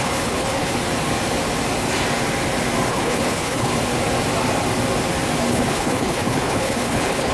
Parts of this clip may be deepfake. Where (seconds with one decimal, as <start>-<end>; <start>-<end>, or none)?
0.0-0.7; 2.9-3.7; 5.5-7.3

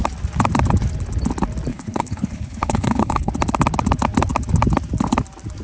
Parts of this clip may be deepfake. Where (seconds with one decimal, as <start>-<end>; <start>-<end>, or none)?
1.7-3.3

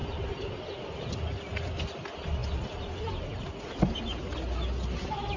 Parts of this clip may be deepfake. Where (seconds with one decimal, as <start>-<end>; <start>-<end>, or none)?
none